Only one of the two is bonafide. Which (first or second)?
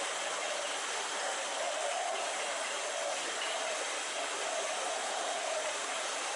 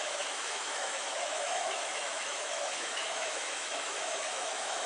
first